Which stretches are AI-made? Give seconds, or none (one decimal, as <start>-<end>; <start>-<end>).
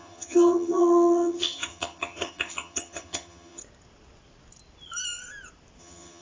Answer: 0.0-3.6; 5.8-6.2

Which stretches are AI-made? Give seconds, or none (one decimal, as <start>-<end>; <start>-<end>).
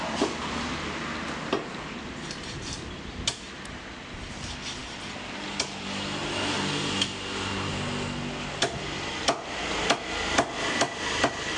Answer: none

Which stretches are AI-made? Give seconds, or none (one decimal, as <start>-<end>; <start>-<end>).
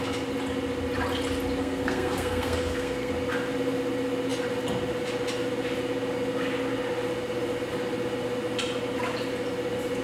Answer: 1.6-3.1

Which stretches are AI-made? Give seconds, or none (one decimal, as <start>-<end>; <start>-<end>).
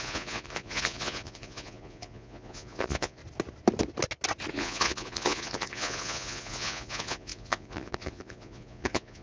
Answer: 0.0-3.2; 4.5-9.2